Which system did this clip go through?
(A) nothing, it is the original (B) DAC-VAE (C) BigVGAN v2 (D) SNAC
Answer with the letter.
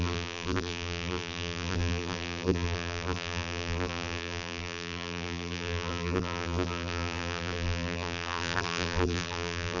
C